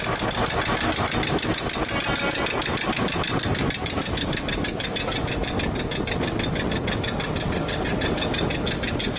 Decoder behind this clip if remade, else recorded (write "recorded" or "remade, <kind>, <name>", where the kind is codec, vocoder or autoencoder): recorded